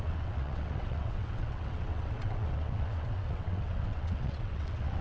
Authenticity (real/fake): fake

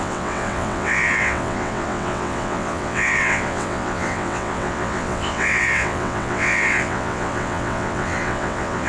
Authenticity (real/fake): fake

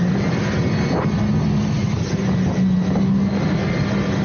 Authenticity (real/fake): real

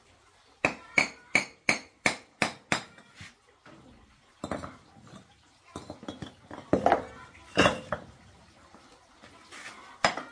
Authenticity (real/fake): real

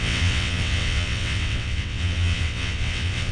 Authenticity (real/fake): fake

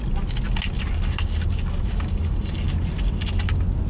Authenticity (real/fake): real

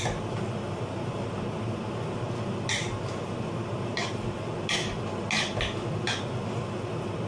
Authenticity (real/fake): real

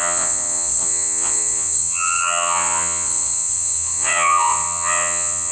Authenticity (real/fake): fake